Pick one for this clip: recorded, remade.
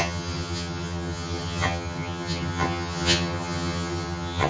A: remade